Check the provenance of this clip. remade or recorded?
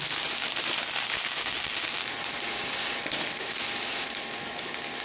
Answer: recorded